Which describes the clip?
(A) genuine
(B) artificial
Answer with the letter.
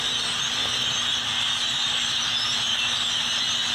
A